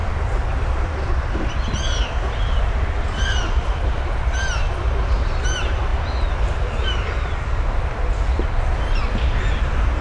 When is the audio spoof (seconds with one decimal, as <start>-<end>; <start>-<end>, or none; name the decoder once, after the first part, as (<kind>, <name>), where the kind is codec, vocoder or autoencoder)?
0.0-4.1 (vocoder, BigVGAN v2)

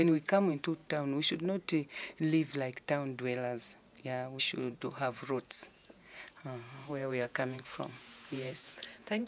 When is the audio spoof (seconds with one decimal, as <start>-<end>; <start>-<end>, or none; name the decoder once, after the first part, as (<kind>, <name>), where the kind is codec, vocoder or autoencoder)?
0.0-0.8 (vocoder, Vocos); 4.4-9.3

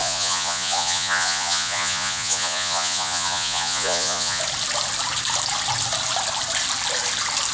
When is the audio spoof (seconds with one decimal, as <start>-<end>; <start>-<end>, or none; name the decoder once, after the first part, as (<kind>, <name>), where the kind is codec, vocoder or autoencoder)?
0.0-4.4 (vocoder, Vocos)